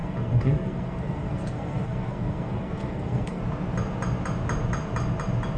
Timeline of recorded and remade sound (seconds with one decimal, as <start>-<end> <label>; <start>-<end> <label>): 0.0-3.4 remade; 3.4-5.6 recorded